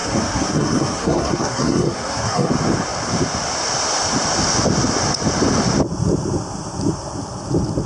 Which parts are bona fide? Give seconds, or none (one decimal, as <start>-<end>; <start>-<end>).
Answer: 2.5-7.9